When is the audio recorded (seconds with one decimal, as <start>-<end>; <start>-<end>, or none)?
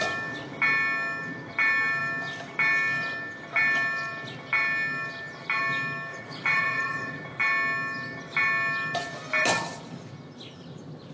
0.0-6.1; 7.4-11.1